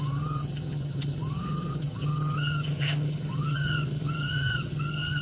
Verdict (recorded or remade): remade